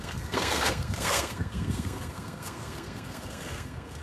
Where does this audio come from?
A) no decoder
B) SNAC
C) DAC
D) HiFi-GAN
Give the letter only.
B